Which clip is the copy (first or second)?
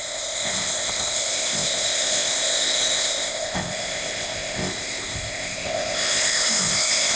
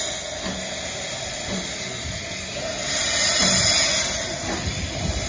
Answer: first